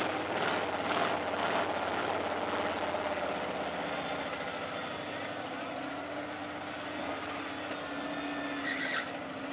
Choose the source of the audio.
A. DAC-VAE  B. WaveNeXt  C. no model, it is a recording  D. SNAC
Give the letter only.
C